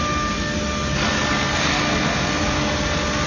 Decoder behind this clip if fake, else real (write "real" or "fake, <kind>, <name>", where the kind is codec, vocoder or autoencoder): real